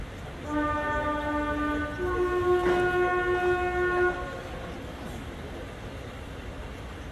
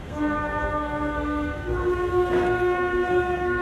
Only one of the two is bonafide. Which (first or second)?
first